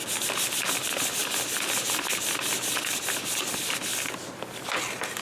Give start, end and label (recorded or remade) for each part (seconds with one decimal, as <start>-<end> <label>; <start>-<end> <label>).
0.0-5.2 recorded